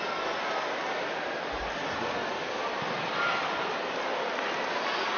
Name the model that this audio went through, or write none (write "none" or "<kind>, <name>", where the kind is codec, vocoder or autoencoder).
none